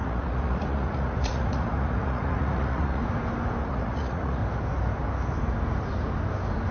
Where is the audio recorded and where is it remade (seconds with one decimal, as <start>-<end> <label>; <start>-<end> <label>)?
0.0-3.0 remade; 3.0-3.6 recorded; 3.6-4.4 remade; 4.4-6.7 recorded